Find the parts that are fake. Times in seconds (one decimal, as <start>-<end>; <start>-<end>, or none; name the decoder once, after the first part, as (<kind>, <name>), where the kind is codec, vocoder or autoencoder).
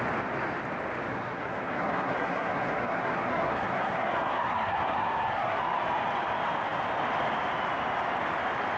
1.1-5.6 (codec, SNAC)